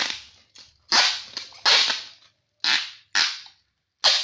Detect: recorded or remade recorded